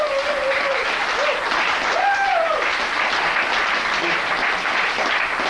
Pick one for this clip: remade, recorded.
recorded